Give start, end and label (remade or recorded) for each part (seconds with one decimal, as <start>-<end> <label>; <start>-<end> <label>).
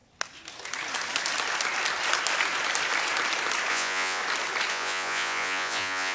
0.0-3.7 recorded; 3.7-4.2 remade; 4.2-4.7 recorded; 4.7-6.1 remade